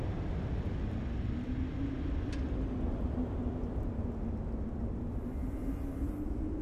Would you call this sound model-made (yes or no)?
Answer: no